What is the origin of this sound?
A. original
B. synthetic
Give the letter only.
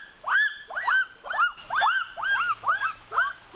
A